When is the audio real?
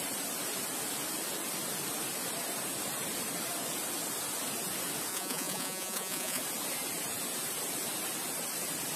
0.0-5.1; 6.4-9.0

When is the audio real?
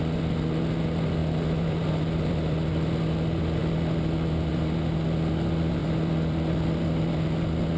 0.0-7.8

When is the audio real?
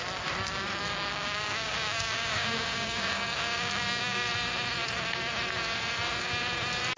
0.0-1.1; 4.3-7.0